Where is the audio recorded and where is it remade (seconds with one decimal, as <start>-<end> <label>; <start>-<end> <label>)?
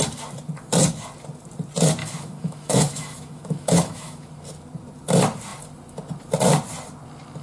0.0-2.0 recorded; 2.0-4.3 remade; 4.3-7.4 recorded